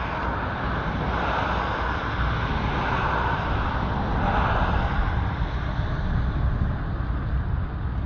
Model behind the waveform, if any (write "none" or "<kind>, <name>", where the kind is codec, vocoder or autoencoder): none